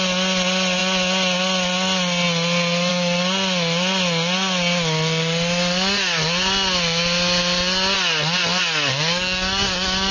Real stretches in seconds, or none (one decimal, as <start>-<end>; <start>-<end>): 0.0-8.9